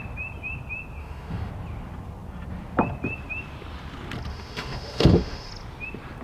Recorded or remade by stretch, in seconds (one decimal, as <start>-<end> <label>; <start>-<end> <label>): 0.0-1.0 recorded; 1.0-1.5 remade; 1.5-4.3 recorded; 4.3-5.5 remade; 5.5-6.2 recorded